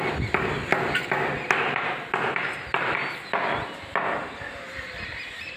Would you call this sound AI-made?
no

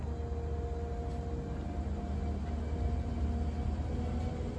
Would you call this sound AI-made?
no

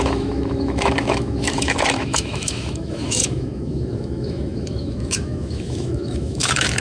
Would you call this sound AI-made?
yes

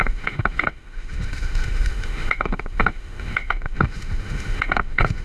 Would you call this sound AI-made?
yes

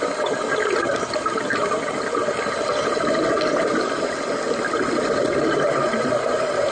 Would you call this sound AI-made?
no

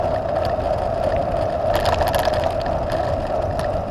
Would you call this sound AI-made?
no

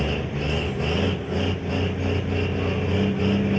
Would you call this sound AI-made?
no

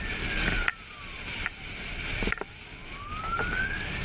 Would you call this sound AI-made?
no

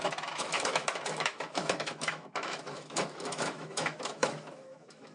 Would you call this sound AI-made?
yes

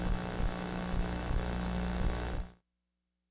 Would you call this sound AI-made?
yes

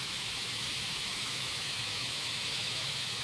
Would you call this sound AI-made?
yes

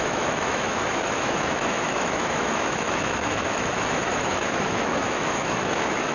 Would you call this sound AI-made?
yes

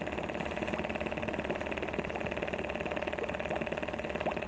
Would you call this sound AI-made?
no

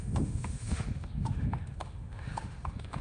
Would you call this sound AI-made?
yes